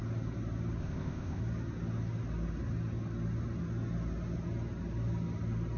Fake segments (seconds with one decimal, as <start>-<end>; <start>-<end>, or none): 0.8-1.4